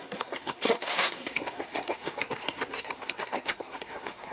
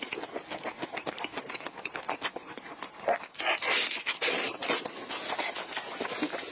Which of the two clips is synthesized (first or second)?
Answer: first